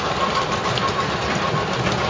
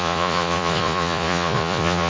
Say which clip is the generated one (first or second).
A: second